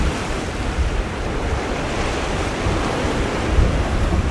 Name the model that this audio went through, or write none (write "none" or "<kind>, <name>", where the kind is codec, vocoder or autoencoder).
none